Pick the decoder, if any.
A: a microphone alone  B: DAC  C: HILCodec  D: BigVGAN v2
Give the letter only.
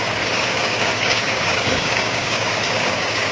B